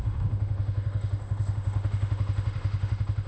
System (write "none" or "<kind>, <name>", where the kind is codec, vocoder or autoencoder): autoencoder, DAC-VAE